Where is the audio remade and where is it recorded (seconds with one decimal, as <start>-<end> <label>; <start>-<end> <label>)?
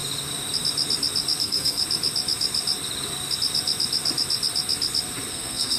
0.0-1.4 recorded; 1.4-1.8 remade; 1.8-5.3 recorded; 5.3-5.8 remade